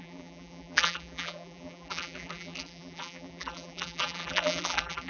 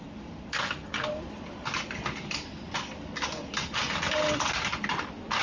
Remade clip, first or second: first